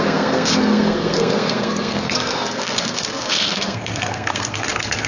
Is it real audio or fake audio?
fake